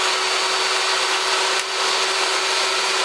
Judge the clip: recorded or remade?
recorded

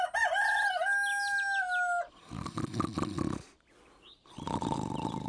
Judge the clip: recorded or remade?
recorded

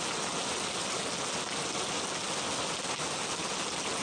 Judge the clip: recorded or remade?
recorded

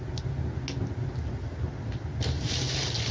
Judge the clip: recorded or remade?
recorded